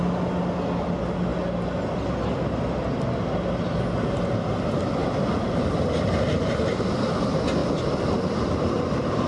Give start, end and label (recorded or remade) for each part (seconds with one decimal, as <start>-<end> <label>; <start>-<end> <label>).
0.0-7.6 recorded; 7.6-8.7 remade; 8.7-9.3 recorded